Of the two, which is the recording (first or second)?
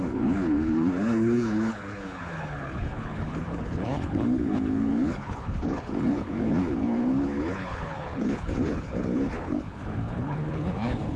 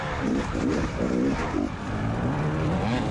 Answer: second